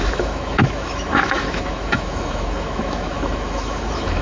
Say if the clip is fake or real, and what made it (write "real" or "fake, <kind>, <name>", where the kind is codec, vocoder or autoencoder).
fake, autoencoder, DAC-VAE